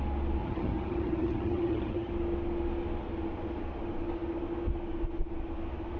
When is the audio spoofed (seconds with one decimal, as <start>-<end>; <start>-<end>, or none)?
0.4-2.1